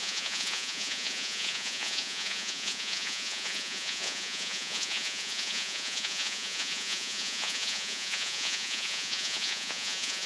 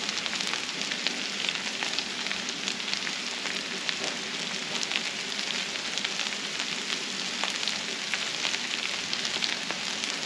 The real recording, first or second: second